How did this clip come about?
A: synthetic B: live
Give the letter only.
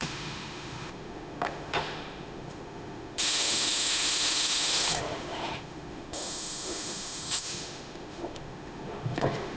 A